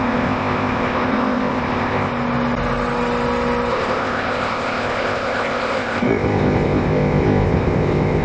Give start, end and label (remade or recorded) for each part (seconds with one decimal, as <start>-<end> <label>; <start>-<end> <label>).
0.0-2.1 remade; 2.1-3.7 recorded; 3.7-8.2 remade